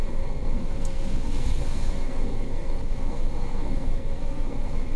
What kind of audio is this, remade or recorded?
remade